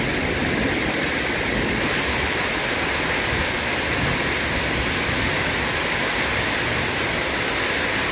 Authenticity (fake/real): real